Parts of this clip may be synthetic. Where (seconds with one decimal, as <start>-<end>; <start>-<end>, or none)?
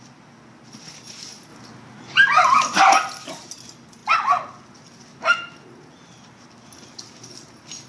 none